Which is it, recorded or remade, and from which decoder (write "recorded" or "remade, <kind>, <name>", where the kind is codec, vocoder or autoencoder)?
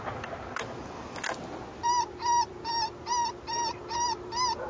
recorded